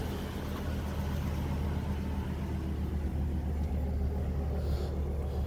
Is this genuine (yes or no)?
yes